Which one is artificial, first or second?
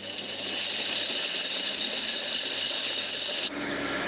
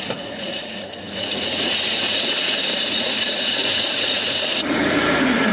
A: second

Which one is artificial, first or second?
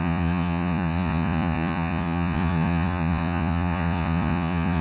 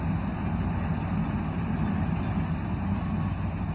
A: first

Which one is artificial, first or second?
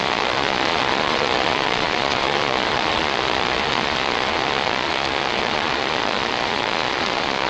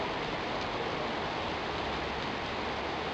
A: first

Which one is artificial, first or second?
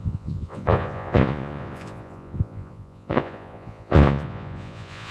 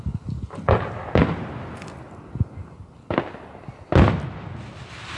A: first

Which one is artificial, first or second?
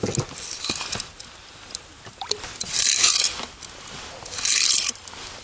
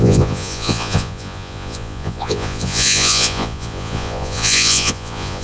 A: second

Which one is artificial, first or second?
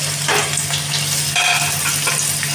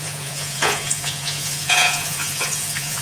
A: second